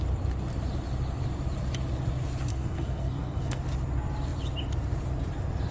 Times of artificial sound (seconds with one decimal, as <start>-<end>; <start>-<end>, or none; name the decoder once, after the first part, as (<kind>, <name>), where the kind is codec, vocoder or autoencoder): 2.5-3.6 (codec, SNAC)